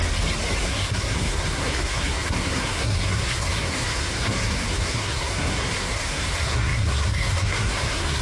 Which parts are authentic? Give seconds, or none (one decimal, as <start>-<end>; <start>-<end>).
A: 0.0-0.6